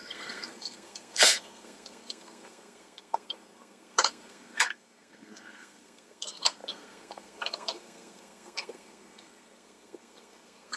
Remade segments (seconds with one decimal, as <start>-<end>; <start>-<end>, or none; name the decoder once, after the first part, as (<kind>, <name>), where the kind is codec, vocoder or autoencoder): 0.0-10.8 (codec, SNAC)